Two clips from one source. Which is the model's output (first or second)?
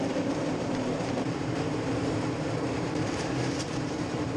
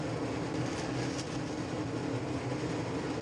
first